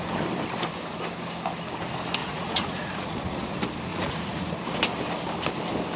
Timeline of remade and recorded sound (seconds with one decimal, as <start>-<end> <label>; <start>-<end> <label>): 0.0-2.2 recorded; 2.2-3.5 remade; 3.5-3.9 recorded; 3.9-4.6 remade; 4.6-6.0 recorded